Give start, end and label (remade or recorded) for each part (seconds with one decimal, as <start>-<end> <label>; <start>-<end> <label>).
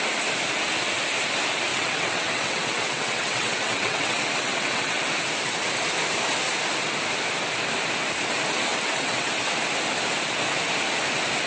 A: 0.0-1.7 recorded; 1.7-5.0 remade; 5.0-8.7 recorded; 8.7-9.3 remade; 9.3-11.5 recorded